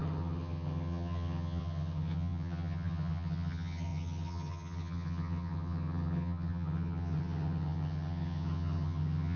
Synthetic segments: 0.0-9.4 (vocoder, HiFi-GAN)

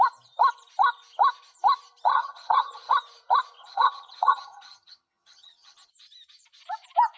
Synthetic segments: 2.1-2.9 (vocoder, HiFi-GAN); 3.6-5.9

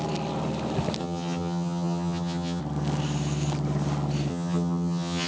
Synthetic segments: 1.0-2.6 (vocoder, HiFi-GAN); 4.3-5.3

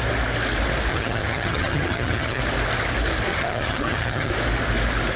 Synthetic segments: 0.9-2.4 (vocoder, HiFi-GAN); 3.3-4.3

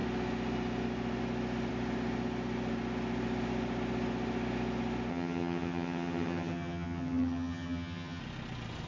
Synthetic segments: 5.1-8.2 (vocoder, HiFi-GAN)

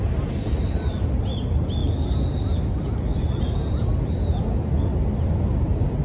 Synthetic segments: none